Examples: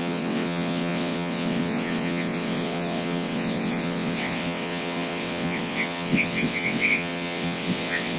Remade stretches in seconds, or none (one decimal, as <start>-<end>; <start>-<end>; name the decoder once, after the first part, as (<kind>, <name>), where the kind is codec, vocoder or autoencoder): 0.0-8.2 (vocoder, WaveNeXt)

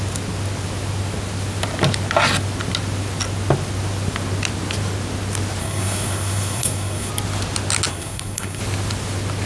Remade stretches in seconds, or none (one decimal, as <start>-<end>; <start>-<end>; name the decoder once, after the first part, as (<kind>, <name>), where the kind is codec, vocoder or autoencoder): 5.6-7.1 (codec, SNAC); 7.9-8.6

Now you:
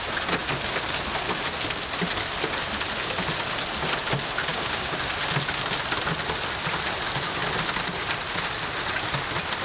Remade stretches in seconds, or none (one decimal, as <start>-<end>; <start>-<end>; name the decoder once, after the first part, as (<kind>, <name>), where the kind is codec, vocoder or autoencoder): 4.5-5.1 (codec, DAC)

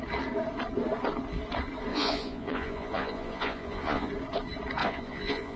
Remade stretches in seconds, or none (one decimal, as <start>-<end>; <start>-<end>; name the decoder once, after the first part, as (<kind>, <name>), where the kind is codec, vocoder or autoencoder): 1.9-4.1 (vocoder, Vocos); 4.8-5.6

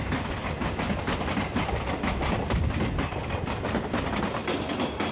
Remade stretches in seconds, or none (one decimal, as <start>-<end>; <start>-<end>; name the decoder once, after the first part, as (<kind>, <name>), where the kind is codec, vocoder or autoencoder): none

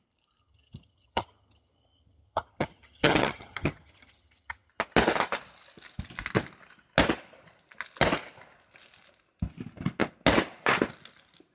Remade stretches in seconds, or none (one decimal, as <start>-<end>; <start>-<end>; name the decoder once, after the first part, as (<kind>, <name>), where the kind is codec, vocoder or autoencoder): 0.4-4.7 (vocoder, HiFi-GAN)

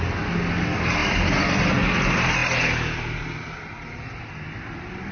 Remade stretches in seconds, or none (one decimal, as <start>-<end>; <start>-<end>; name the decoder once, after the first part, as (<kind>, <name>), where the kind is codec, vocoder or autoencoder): none